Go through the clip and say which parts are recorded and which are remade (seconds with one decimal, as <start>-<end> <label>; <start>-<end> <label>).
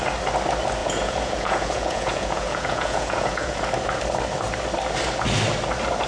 0.0-0.8 recorded; 0.8-3.7 remade; 3.7-6.1 recorded